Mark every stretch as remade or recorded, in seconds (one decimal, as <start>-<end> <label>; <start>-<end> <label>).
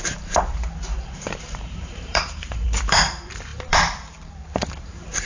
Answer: 0.0-5.3 remade